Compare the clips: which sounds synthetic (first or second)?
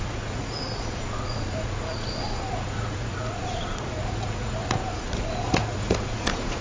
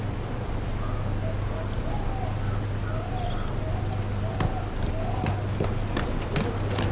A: first